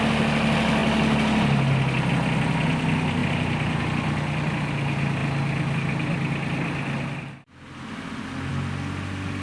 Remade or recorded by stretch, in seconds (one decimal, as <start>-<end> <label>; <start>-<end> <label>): 0.0-3.2 recorded; 3.2-3.8 remade; 3.8-9.4 recorded